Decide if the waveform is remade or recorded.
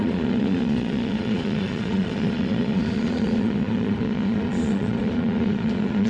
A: remade